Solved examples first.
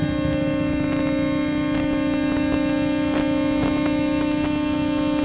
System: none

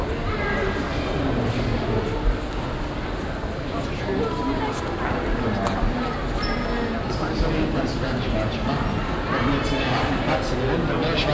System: none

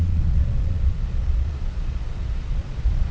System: vocoder, Vocos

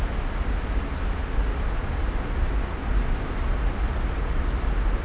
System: none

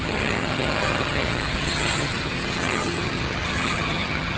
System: vocoder, HiFi-GAN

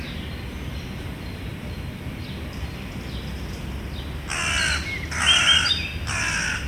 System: none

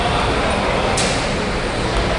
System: none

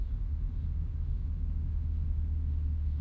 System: autoencoder, DAC-VAE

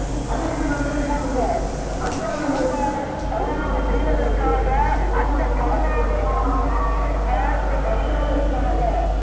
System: none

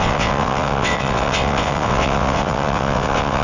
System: vocoder, WaveNeXt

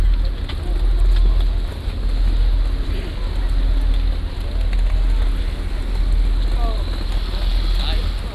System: none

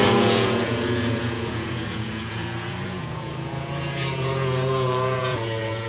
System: vocoder, Vocos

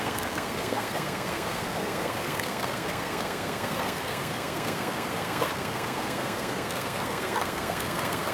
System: codec, SNAC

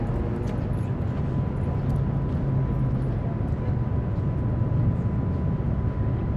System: none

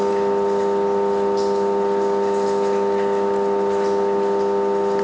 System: none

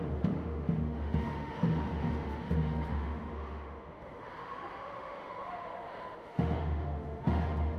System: autoencoder, DAC-VAE